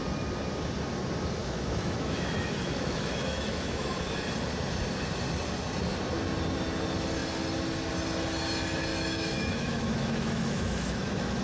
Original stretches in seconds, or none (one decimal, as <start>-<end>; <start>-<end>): 0.0-1.4; 3.9-8.9